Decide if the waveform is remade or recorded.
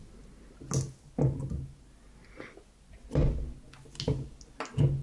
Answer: recorded